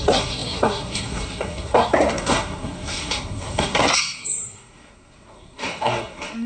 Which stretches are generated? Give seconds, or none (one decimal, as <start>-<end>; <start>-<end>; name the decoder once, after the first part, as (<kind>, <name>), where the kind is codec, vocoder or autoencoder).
0.0-6.5 (codec, SNAC)

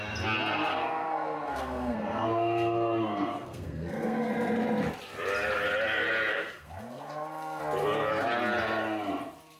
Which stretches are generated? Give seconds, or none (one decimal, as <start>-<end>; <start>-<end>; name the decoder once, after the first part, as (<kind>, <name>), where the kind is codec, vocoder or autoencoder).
0.7-4.3 (codec, SNAC); 6.3-7.6

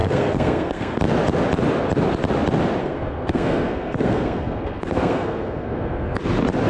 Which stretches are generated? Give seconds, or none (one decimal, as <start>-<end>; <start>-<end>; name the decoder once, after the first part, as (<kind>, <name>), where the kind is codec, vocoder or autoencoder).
0.0-1.0 (codec, SNAC); 2.8-6.2

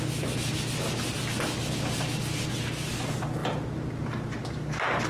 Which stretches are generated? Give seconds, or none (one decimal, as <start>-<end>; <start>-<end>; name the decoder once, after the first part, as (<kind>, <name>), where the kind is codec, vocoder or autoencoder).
none